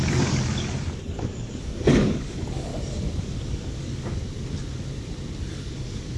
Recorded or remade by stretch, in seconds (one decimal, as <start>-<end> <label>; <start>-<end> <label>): 0.0-2.7 remade; 2.7-3.2 recorded; 3.2-4.2 remade; 4.2-5.4 recorded; 5.4-6.2 remade